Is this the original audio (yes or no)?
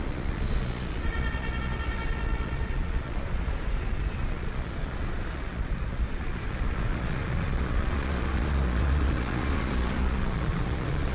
no